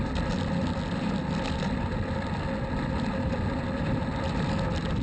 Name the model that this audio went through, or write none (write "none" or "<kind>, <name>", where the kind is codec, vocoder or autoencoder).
none